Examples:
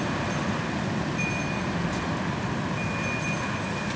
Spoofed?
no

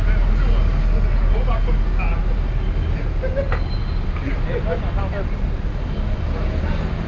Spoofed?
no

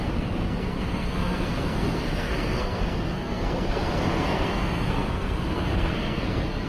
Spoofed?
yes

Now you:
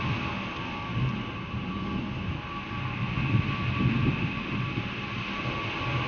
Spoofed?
no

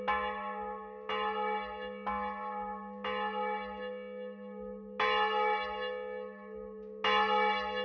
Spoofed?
no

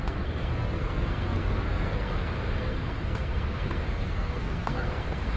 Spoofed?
yes